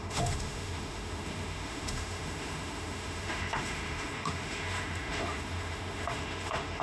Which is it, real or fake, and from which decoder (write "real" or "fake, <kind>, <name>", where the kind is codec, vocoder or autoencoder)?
fake, autoencoder, DAC-VAE